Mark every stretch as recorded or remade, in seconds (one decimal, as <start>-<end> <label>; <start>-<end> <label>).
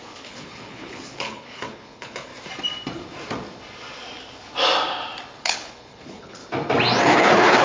0.0-2.3 remade; 2.3-5.4 recorded; 5.4-6.4 remade; 6.4-7.0 recorded; 7.0-7.6 remade